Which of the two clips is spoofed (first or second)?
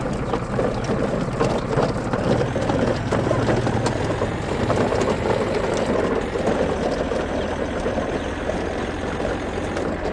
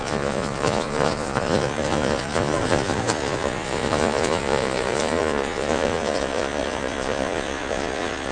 second